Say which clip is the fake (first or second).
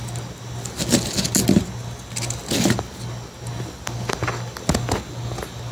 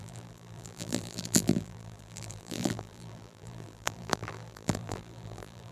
second